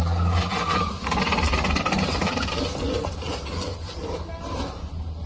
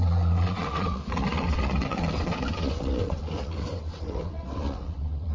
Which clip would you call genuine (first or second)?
first